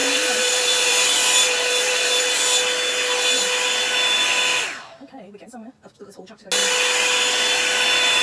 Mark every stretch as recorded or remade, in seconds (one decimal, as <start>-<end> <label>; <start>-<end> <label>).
0.0-2.2 remade; 2.2-8.2 recorded